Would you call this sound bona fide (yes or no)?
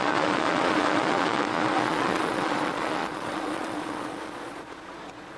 no